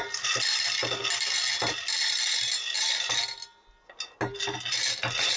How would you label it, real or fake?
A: real